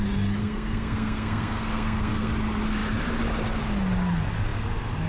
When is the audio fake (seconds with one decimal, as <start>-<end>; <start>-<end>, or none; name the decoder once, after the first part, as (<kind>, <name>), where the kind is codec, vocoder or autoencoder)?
0.4-2.3 (codec, SNAC)